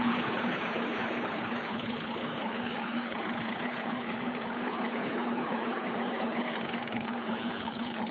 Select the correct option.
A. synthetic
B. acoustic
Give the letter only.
A